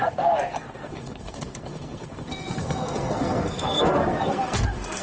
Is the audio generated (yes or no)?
yes